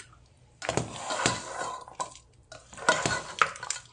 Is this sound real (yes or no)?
yes